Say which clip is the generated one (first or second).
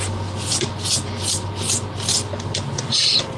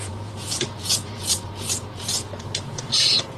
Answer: second